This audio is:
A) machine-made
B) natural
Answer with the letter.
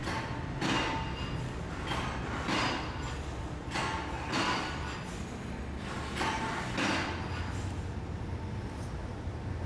B